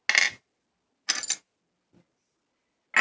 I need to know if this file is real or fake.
real